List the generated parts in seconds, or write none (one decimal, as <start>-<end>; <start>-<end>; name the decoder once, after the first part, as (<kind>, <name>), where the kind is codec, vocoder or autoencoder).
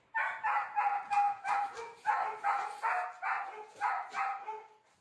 none